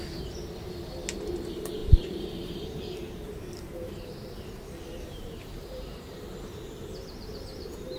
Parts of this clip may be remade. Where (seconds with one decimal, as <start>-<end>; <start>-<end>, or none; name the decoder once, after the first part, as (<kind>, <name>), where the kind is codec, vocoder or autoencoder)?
1.8-4.4 (vocoder, BigVGAN v2); 4.9-8.0